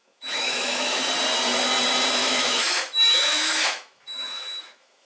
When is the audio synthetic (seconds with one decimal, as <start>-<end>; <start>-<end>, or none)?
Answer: 0.0-1.0; 2.2-5.1